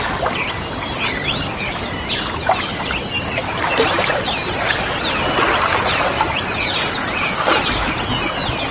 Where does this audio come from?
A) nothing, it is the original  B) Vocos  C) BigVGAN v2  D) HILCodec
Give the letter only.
A